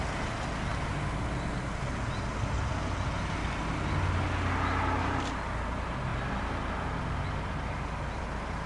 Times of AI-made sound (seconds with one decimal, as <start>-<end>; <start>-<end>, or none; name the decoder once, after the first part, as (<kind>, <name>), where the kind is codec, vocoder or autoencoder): none